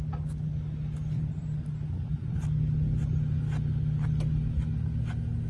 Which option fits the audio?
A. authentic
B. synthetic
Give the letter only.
A